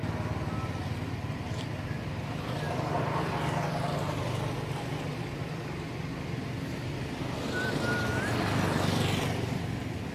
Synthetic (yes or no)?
no